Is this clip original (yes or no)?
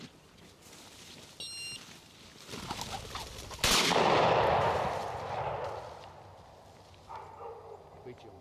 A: yes